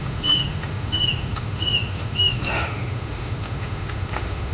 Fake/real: fake